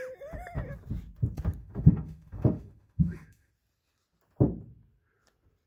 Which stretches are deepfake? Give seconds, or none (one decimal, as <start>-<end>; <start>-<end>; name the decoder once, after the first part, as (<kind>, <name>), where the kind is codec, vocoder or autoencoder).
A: 1.6-3.5 (autoencoder, DAC-VAE)